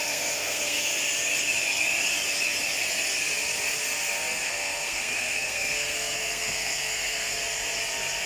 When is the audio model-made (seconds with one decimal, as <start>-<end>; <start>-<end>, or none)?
0.0-0.9; 4.5-7.4